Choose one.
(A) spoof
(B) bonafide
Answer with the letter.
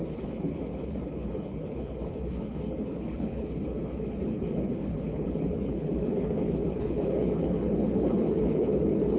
A